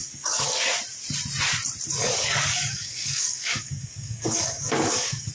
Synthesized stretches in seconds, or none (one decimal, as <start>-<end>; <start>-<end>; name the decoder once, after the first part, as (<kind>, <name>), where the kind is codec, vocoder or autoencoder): 0.0-0.6 (codec, DAC); 2.0-5.3

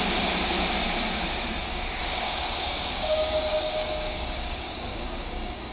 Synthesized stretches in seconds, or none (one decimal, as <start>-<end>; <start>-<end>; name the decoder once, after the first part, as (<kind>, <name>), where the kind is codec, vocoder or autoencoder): 2.0-5.7 (codec, DAC)

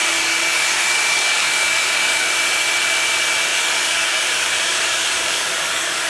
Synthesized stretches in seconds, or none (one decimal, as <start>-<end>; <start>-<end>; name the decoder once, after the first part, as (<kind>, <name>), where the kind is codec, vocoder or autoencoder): 0.0-2.3 (codec, DAC); 3.5-6.1

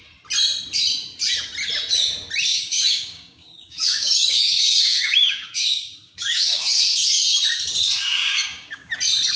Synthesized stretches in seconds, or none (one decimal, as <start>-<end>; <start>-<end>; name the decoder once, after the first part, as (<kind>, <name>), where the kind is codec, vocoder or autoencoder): 2.5-6.8 (codec, DAC); 8.0-8.9